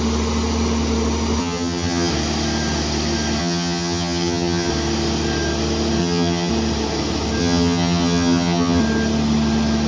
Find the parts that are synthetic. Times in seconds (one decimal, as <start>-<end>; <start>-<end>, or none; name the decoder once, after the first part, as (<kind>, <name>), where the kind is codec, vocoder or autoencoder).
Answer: 1.4-2.1 (vocoder, HiFi-GAN); 3.4-4.7; 6.0-6.5; 7.4-8.8